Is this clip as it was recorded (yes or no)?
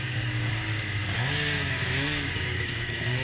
no